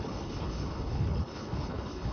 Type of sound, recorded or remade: remade